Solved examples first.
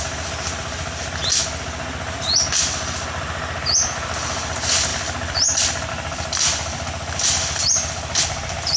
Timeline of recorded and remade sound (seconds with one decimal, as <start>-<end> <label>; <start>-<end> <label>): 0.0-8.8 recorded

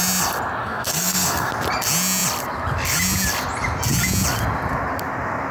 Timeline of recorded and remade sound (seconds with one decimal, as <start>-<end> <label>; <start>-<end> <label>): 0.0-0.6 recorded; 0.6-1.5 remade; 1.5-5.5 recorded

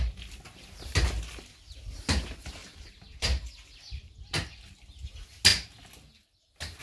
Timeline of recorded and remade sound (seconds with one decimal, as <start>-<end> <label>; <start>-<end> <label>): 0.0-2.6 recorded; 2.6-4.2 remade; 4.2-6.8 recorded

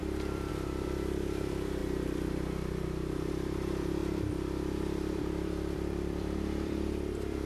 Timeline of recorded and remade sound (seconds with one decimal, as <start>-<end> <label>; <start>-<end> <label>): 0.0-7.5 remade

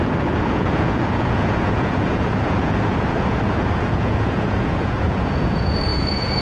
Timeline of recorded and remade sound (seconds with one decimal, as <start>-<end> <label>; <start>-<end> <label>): 0.0-6.4 remade